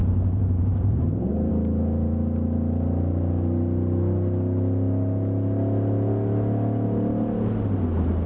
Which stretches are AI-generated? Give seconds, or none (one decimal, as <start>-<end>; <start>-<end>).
0.0-1.5